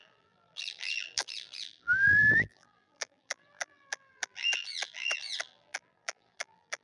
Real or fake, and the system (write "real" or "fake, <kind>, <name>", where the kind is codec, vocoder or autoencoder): fake, vocoder, BigVGAN v2